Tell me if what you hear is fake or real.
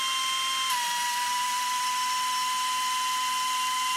real